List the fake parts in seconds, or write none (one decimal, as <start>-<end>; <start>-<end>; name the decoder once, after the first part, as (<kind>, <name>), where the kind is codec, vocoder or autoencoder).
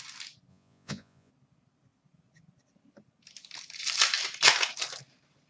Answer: 0.5-1.3 (vocoder, Vocos)